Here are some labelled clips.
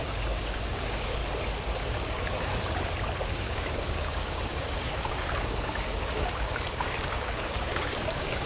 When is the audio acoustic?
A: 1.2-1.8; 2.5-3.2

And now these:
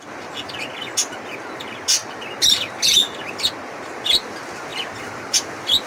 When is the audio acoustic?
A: 0.0-5.9

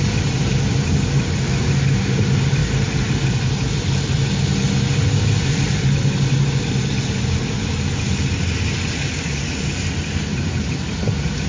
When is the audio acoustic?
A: 0.0-11.5

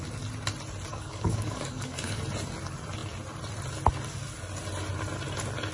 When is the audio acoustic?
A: 0.0-0.9; 2.2-5.7

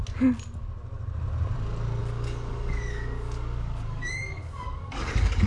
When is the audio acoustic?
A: 0.0-2.0

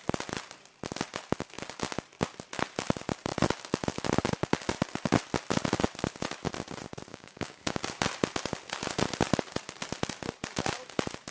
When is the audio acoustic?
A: 0.0-7.1; 7.8-11.3